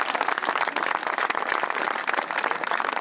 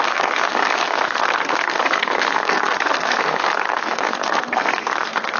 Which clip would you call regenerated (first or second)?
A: second